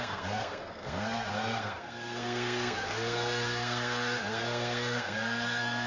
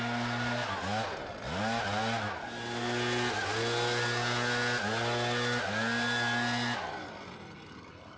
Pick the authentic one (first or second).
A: second